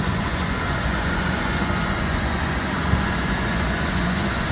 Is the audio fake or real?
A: fake